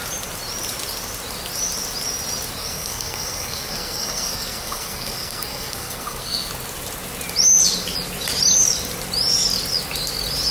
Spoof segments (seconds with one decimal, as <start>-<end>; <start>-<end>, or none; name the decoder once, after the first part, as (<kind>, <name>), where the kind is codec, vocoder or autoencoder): 2.6-6.5 (codec, SNAC)